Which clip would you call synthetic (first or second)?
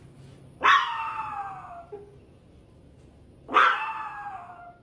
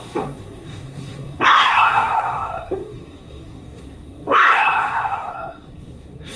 second